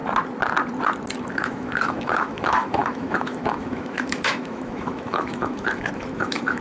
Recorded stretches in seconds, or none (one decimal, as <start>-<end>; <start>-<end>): 0.0-1.3